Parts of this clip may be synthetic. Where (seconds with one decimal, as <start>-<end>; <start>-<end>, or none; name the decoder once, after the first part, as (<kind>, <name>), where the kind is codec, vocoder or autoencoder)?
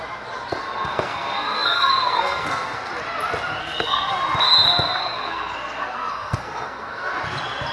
0.6-2.9 (codec, SNAC); 3.6-4.1; 5.0-7.1